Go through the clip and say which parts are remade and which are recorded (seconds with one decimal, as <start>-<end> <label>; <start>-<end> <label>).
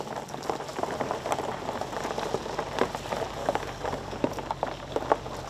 0.0-3.4 recorded; 3.4-4.3 remade; 4.3-5.5 recorded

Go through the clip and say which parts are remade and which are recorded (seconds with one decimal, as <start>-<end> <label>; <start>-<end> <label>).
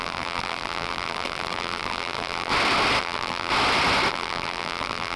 0.0-2.5 remade; 2.5-3.0 recorded; 3.0-3.5 remade; 3.5-4.1 recorded; 4.1-5.2 remade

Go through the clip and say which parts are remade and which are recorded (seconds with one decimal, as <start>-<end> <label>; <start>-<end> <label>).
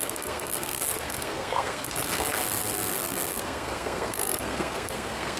0.0-5.4 remade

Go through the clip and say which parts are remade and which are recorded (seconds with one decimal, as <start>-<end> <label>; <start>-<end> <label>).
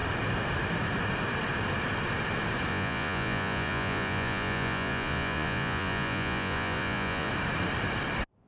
0.0-2.7 recorded; 2.7-7.3 remade; 7.3-8.5 recorded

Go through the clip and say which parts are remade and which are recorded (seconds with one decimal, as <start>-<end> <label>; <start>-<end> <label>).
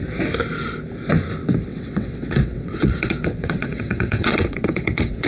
0.0-1.7 recorded; 1.7-5.3 remade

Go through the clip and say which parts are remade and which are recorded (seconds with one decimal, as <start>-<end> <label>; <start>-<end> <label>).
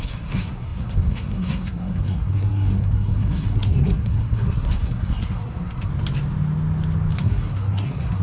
0.0-5.9 remade; 5.9-7.2 recorded; 7.2-8.2 remade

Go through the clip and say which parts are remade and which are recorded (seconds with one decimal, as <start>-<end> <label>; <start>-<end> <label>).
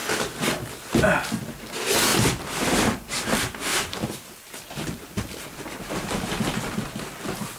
0.0-1.0 remade; 1.0-2.1 recorded; 2.1-3.2 remade; 3.2-3.7 recorded; 3.7-6.4 remade; 6.4-7.6 recorded